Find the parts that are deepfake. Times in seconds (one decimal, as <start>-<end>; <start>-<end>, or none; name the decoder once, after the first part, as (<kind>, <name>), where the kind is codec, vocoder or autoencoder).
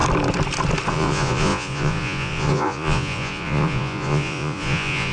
0.9-5.1 (vocoder, Vocos)